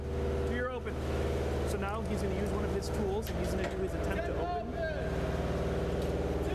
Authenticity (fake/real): real